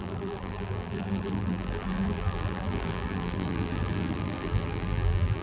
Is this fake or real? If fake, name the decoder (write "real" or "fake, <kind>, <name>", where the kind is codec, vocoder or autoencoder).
fake, vocoder, BigVGAN v2